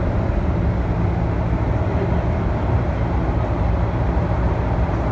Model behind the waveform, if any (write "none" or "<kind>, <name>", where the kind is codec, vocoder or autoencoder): none